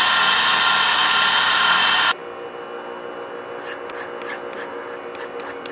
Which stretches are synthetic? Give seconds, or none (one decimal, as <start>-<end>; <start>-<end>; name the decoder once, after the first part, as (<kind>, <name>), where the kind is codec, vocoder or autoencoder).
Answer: none